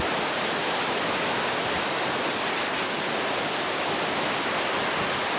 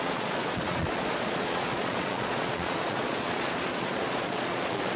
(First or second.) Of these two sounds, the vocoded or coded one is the second